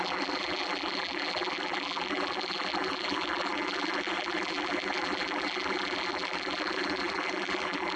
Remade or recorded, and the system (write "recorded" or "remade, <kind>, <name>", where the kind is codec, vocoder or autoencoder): remade, vocoder, BigVGAN v2